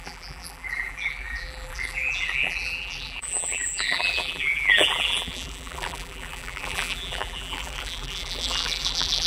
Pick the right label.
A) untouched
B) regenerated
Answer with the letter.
B